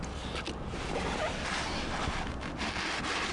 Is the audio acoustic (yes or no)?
yes